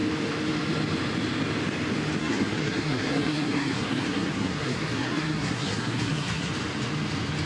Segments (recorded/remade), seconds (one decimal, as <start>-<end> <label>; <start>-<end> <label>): 0.0-2.2 recorded; 2.2-6.5 remade; 6.5-7.5 recorded